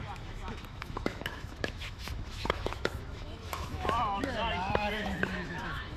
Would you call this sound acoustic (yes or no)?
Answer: no